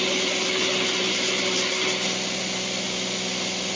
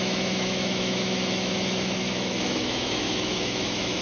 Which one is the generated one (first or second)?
second